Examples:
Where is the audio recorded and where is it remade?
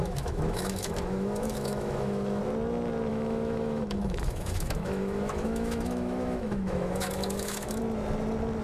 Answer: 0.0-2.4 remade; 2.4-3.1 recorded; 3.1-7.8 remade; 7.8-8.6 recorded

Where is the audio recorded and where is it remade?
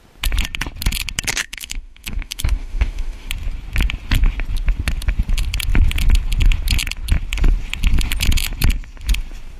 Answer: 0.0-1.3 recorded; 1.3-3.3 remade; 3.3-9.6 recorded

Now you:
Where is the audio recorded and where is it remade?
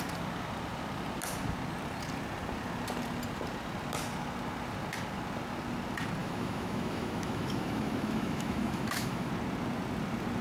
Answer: 0.0-6.2 recorded; 6.2-9.3 remade; 9.3-10.4 recorded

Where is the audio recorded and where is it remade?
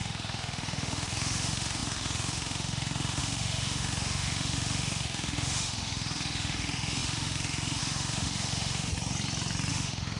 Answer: 0.0-8.9 remade; 8.9-9.7 recorded; 9.7-10.2 remade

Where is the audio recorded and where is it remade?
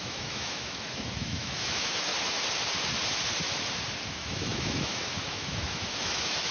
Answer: 0.0-2.1 remade; 2.1-4.1 recorded; 4.1-6.5 remade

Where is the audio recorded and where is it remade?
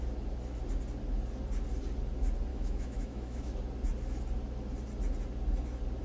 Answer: 0.0-2.5 recorded; 2.5-3.5 remade; 3.5-6.0 recorded